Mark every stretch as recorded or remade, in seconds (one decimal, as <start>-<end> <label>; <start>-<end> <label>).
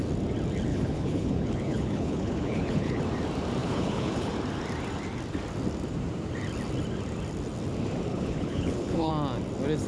0.0-0.7 recorded; 0.7-3.0 remade; 3.0-3.6 recorded; 3.6-4.3 remade; 4.3-8.1 recorded; 8.1-9.1 remade; 9.1-9.9 recorded